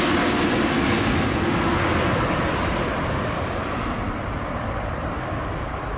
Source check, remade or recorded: recorded